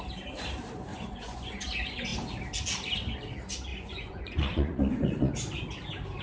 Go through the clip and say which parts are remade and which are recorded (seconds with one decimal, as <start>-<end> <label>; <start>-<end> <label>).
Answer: 0.0-0.9 recorded; 0.9-1.6 remade; 1.6-3.7 recorded; 3.7-5.3 remade; 5.3-6.2 recorded